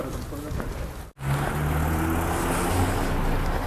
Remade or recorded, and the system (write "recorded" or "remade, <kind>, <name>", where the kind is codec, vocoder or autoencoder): recorded